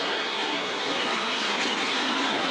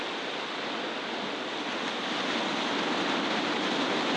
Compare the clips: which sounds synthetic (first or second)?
first